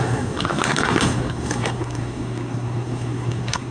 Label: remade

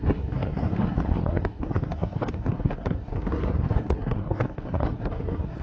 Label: remade